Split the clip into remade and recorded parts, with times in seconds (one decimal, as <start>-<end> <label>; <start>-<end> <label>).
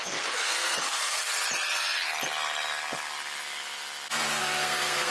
0.0-1.3 remade; 1.3-4.4 recorded; 4.4-5.1 remade